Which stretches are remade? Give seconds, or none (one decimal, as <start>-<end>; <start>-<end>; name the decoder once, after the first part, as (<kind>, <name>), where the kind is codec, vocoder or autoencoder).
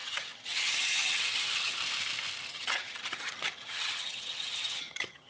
0.0-1.7 (vocoder, HiFi-GAN); 2.5-5.3